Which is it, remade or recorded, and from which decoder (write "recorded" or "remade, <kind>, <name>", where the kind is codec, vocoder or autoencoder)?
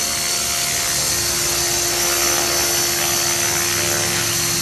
recorded